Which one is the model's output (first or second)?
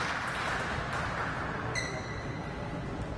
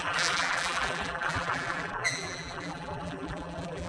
second